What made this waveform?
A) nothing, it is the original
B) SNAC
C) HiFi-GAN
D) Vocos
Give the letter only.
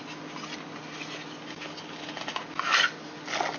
A